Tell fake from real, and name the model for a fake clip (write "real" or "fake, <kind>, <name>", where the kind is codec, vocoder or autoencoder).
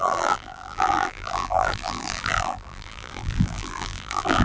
fake, vocoder, BigVGAN v2